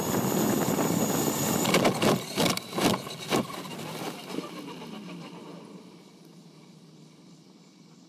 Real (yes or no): yes